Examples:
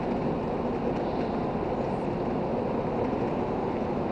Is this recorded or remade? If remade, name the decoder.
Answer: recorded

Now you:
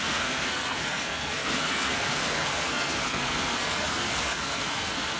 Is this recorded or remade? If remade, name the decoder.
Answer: remade, codec, SNAC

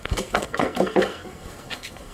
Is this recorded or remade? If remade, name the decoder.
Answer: remade, codec, SNAC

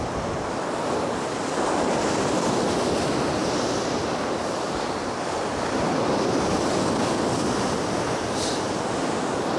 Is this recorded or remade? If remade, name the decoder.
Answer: recorded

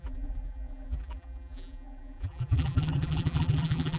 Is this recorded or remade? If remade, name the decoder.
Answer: remade, vocoder, BigVGAN v2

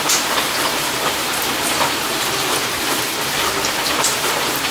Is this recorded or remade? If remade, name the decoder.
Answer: remade, vocoder, BigVGAN v2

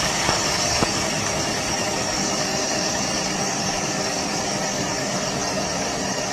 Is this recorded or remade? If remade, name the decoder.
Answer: remade, codec, DAC